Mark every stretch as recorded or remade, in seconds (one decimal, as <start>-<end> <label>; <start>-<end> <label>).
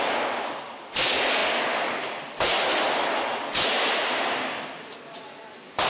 0.0-5.9 recorded